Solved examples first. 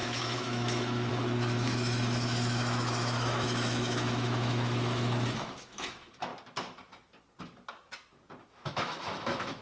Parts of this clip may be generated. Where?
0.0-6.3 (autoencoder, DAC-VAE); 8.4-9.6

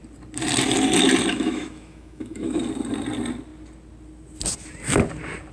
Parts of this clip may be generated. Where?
1.3-2.6 (autoencoder, DAC-VAE)

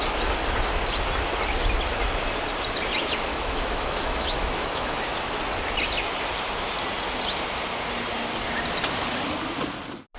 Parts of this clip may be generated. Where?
3.3-5.4 (autoencoder, DAC-VAE)

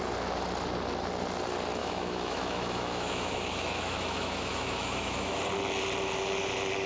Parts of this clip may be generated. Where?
1.8-5.4 (autoencoder, DAC-VAE)

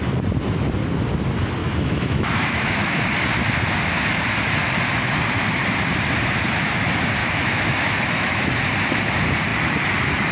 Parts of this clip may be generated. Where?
1.6-3.0 (autoencoder, DAC-VAE); 7.2-8.5

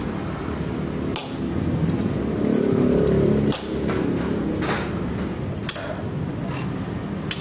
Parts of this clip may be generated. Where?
none